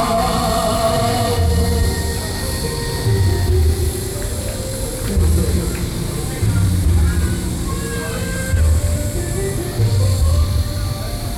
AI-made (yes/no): yes